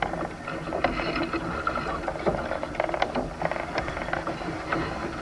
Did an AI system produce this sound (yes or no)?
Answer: no